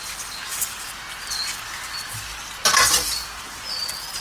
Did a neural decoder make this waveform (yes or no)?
no